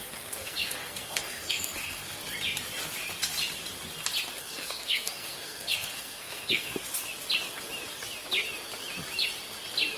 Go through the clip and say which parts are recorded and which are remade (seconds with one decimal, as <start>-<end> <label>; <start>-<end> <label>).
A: 0.0-2.2 remade; 2.2-4.4 recorded; 4.4-6.7 remade; 6.7-10.0 recorded